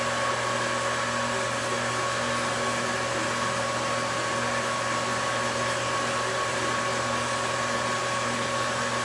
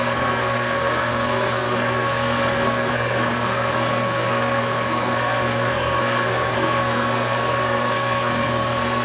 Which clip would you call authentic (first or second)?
first